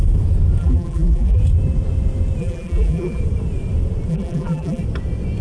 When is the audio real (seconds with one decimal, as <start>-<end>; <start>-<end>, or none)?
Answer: 0.0-0.6; 1.4-2.4; 3.2-4.1; 4.8-5.4